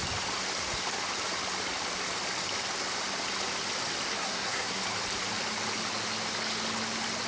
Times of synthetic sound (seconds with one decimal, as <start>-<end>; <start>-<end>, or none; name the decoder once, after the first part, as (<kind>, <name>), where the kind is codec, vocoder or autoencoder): 4.2-4.8 (codec, SNAC)